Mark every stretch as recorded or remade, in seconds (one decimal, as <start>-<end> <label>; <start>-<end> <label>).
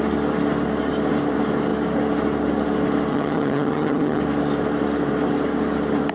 0.0-3.1 recorded; 3.1-4.2 remade; 4.2-6.1 recorded